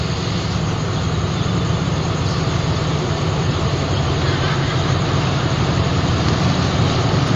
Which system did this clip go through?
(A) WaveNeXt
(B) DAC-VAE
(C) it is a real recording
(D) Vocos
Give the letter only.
C